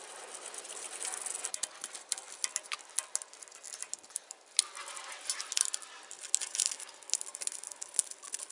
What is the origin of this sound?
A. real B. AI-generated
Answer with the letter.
A